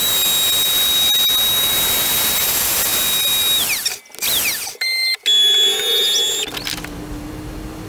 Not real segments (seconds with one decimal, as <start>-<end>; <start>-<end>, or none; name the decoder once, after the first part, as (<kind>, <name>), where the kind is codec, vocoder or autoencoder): none